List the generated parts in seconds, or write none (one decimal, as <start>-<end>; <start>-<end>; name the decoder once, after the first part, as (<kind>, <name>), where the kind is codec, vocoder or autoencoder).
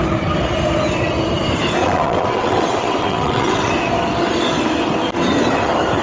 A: 1.8-3.7 (vocoder, WaveNeXt)